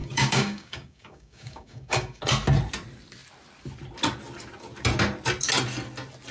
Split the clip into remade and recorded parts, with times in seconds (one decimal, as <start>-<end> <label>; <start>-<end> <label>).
0.0-2.2 remade; 2.2-6.3 recorded